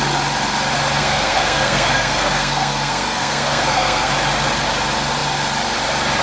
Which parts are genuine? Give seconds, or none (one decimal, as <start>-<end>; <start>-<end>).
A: 0.0-1.0; 4.1-6.2